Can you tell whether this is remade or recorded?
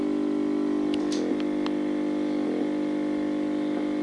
recorded